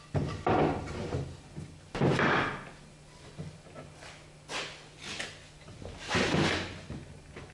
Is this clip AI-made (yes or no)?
no